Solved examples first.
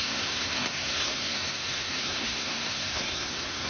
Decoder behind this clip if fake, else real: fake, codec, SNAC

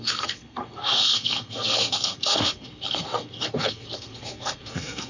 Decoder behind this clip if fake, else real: fake, codec, SNAC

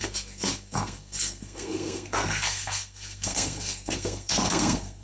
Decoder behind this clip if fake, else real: fake, codec, SNAC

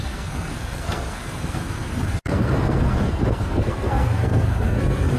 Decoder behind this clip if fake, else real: fake, codec, SNAC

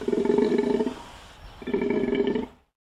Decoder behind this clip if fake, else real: real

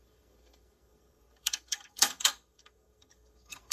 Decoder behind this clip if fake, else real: fake, codec, SNAC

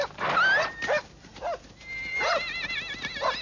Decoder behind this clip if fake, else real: real